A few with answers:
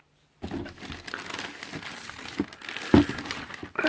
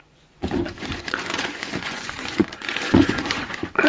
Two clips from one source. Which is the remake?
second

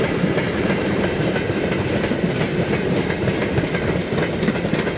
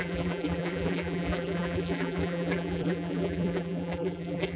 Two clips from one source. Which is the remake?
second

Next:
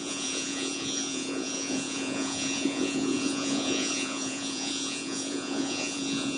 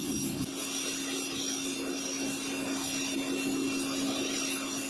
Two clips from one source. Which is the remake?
first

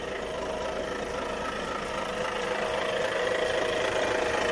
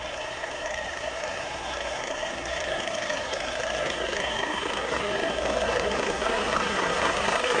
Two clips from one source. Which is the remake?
second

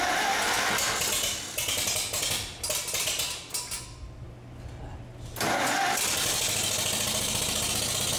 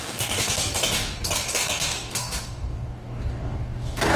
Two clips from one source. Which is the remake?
second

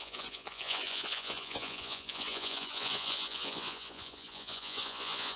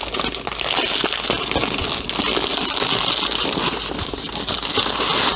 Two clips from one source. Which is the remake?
first